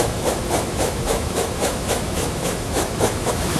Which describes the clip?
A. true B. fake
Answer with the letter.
B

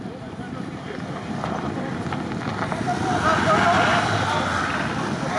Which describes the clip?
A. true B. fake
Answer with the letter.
A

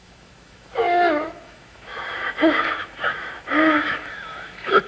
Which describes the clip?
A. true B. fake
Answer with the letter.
B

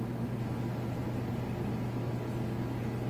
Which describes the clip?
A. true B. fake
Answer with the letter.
A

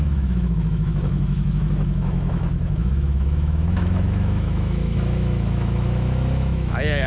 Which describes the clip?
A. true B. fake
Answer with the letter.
B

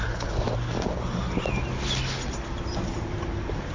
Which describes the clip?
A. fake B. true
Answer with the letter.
B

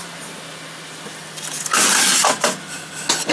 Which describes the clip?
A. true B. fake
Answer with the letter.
A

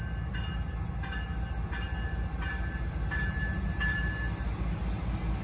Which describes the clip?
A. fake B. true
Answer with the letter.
B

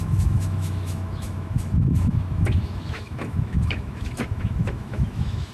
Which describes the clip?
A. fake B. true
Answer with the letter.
A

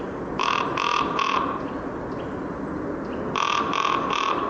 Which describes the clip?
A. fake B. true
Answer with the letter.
B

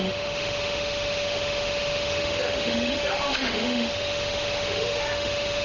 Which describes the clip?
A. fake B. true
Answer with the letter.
A